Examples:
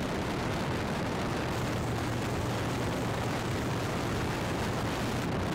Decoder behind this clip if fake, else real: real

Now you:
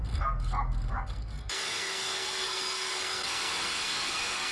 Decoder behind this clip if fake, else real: fake, codec, SNAC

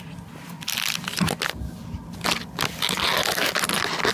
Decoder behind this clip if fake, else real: real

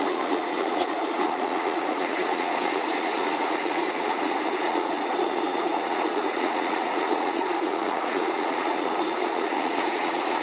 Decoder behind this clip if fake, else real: fake, vocoder, Vocos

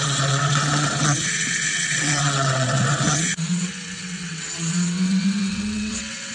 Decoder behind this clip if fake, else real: fake, vocoder, WaveNeXt